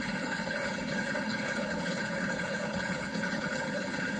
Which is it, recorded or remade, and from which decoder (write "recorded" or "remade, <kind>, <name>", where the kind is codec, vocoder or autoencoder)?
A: remade, codec, HILCodec